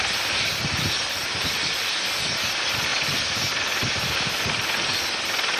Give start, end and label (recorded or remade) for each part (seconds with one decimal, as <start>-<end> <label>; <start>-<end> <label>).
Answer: 0.0-5.6 recorded